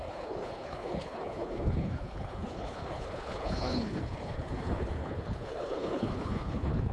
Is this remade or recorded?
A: remade